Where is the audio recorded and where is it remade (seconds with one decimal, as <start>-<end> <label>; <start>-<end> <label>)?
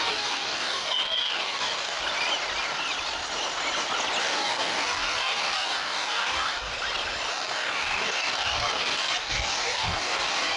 0.0-2.0 remade; 2.0-4.2 recorded; 4.2-6.7 remade; 6.7-7.3 recorded; 7.3-10.6 remade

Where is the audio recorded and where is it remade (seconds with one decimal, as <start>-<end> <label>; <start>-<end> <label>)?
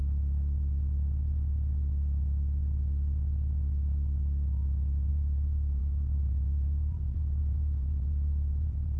0.0-5.1 recorded; 5.1-9.0 remade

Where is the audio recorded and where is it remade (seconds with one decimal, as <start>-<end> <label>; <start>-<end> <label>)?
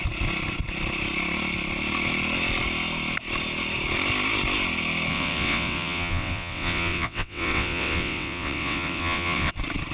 0.0-5.1 recorded; 5.1-9.5 remade; 9.5-9.9 recorded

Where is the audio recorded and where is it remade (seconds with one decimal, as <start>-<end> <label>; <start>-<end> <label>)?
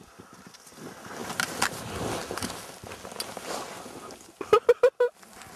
0.0-5.6 recorded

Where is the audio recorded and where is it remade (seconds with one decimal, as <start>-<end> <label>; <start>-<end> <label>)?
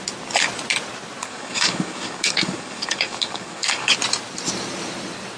0.0-1.2 recorded; 1.2-3.9 remade; 3.9-5.4 recorded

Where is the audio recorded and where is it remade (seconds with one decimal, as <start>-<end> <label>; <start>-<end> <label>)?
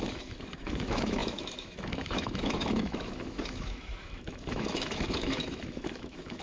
0.0-6.4 remade